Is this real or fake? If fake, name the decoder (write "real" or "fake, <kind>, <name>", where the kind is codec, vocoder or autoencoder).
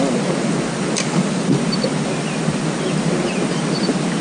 real